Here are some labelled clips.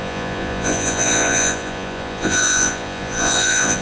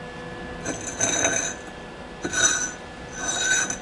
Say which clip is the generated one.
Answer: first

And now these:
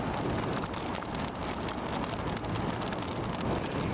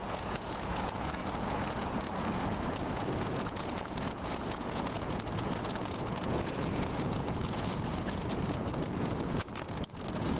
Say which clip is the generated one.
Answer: second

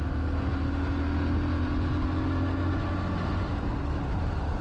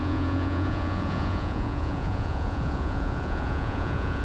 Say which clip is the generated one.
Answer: second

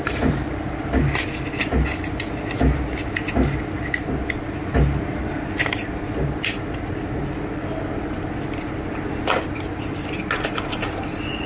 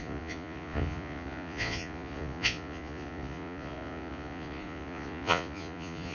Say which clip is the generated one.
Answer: second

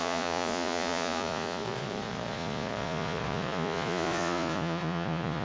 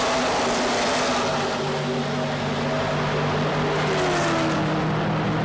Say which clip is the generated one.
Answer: first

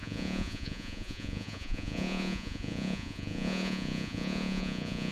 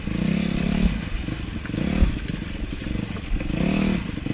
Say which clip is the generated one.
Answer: first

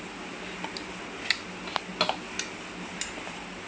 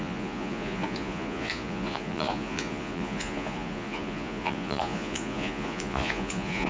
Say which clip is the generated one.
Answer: second